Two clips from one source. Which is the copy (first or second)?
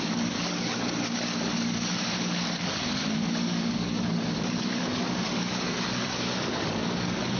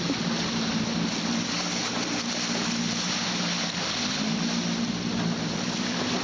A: first